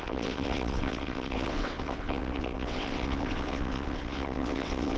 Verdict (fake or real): fake